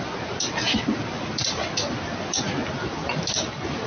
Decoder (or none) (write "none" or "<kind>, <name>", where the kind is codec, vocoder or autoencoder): none